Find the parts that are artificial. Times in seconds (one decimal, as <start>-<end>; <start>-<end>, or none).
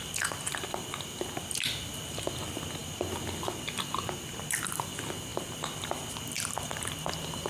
none